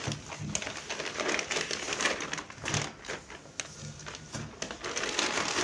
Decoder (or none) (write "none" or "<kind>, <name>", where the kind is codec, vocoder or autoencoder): none